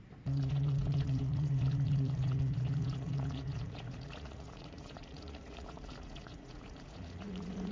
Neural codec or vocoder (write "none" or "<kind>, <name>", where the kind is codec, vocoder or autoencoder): vocoder, Vocos